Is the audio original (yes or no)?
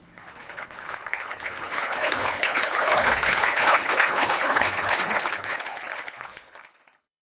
no